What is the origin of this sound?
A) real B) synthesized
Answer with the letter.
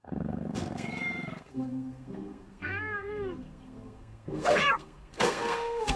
B